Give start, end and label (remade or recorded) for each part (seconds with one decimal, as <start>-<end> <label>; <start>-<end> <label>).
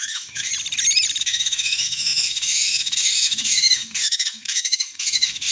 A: 0.0-0.5 remade; 0.5-1.2 recorded; 1.2-5.5 remade